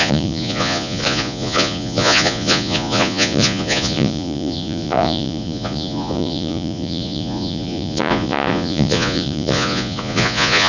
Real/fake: fake